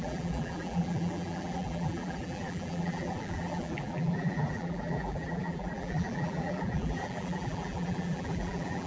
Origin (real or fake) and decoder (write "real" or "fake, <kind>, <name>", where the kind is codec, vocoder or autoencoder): fake, vocoder, BigVGAN v2